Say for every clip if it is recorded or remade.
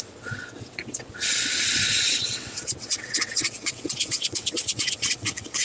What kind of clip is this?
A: remade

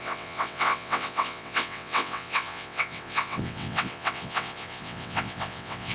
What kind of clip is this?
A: remade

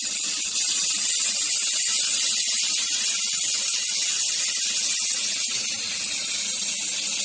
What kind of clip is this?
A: recorded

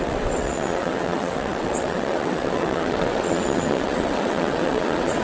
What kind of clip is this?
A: remade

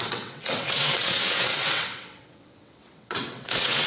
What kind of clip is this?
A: remade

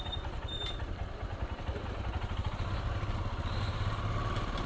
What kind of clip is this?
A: recorded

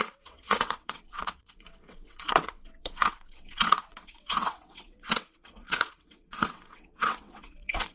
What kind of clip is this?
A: remade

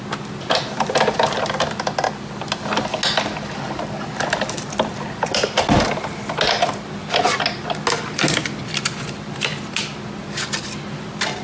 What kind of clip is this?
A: recorded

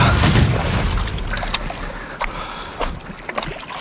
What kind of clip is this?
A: recorded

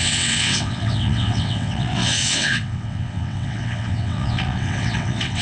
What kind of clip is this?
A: remade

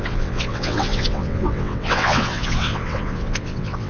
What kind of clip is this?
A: remade